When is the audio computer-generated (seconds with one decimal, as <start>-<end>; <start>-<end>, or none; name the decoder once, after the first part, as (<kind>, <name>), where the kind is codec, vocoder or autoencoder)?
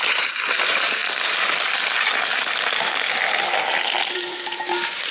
0.0-1.0 (vocoder, BigVGAN v2); 4.1-5.1